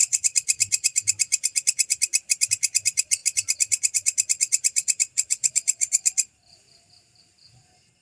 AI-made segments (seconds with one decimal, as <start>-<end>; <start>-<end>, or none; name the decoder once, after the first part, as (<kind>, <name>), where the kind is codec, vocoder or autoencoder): 0.0-8.0 (vocoder, BigVGAN v2)